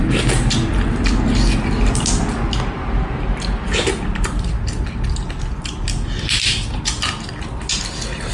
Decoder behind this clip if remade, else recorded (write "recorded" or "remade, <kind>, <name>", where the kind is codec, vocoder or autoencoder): recorded